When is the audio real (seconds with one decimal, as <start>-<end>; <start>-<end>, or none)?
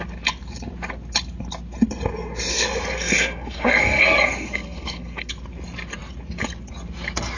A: 0.0-2.5; 5.3-7.4